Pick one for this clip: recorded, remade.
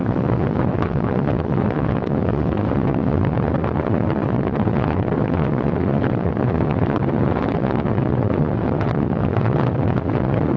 remade